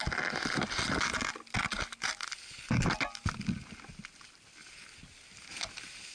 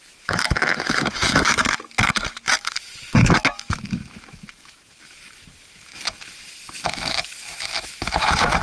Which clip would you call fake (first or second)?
second